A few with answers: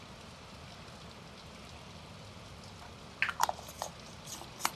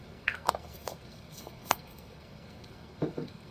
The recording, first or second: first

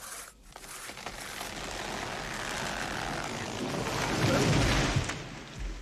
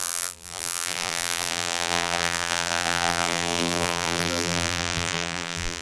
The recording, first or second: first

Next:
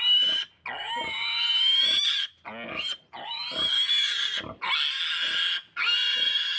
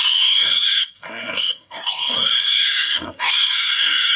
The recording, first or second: first